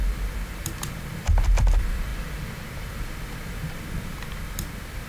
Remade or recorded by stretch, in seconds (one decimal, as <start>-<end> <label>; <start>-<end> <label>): 0.0-0.9 recorded; 0.9-2.1 remade; 2.1-2.9 recorded; 2.9-5.1 remade